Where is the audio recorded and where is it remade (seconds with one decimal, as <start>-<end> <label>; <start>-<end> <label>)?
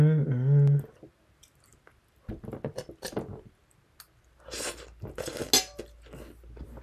0.0-6.8 recorded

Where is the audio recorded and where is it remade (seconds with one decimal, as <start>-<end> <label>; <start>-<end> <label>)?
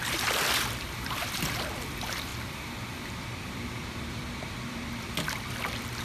0.0-6.0 remade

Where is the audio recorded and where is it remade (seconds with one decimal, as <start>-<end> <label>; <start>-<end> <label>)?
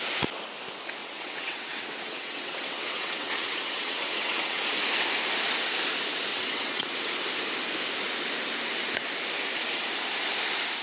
0.0-1.0 recorded; 1.0-4.6 remade; 4.6-6.3 recorded; 6.3-7.1 remade; 7.1-10.8 recorded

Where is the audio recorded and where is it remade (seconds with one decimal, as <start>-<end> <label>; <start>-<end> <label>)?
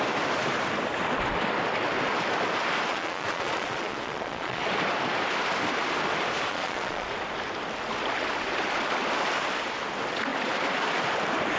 0.0-2.9 recorded; 2.9-4.6 remade; 4.6-6.5 recorded; 6.5-7.1 remade; 7.1-11.6 recorded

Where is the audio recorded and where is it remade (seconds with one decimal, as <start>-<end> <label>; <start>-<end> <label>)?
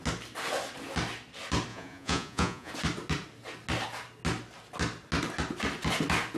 0.0-1.7 recorded; 1.7-2.7 remade; 2.7-6.4 recorded